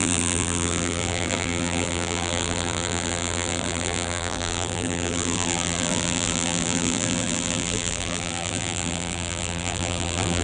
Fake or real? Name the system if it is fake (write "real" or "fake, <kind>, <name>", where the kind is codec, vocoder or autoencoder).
fake, vocoder, BigVGAN v2